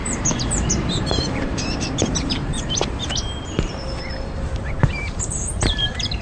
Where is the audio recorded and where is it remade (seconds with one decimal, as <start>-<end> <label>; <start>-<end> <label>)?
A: 0.0-6.2 remade